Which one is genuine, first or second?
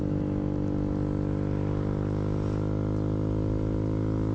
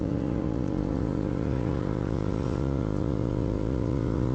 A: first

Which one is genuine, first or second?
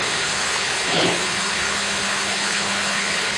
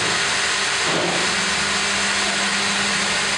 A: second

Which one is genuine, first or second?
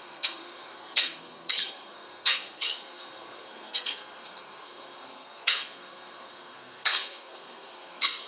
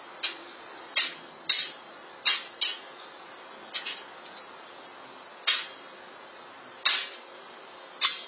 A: second